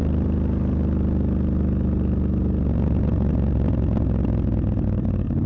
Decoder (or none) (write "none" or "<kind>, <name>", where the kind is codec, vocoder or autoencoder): none